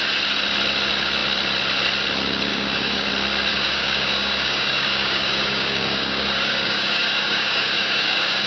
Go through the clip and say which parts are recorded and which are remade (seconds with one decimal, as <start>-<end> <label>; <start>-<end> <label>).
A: 0.0-2.5 recorded; 2.5-3.1 remade; 3.1-3.5 recorded; 3.5-8.5 remade